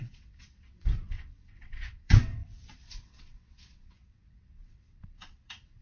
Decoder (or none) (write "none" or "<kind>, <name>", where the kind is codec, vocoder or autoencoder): vocoder, WaveNeXt